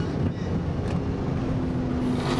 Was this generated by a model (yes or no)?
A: no